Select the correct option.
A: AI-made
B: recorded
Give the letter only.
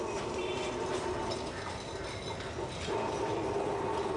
B